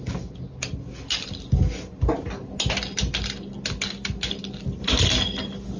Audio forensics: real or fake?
real